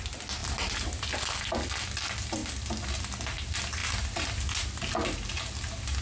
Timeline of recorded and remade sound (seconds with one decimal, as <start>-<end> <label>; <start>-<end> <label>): 0.0-6.0 recorded